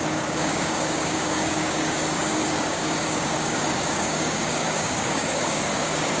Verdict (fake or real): fake